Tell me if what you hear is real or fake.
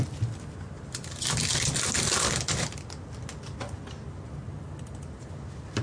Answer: real